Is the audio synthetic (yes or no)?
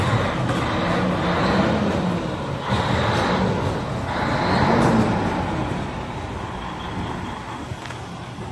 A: no